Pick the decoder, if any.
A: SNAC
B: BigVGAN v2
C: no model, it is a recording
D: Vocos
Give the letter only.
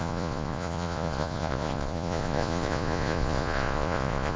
D